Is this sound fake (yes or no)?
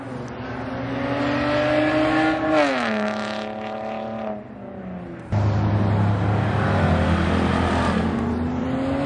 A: no